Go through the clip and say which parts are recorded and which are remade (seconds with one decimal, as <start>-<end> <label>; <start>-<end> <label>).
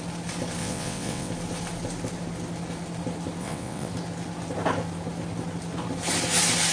0.0-0.6 recorded; 0.6-1.3 remade; 1.3-3.4 recorded; 3.4-3.9 remade; 3.9-6.7 recorded